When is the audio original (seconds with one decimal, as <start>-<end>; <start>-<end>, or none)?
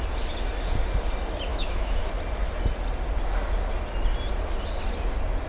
0.0-1.5; 2.1-5.5